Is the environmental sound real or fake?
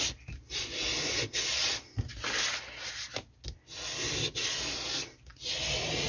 real